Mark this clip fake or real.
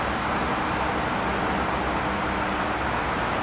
real